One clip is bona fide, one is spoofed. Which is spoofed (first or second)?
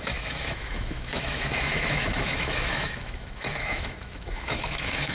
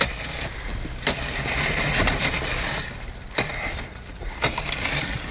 first